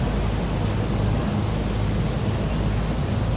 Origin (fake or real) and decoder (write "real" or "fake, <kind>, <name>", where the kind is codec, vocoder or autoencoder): real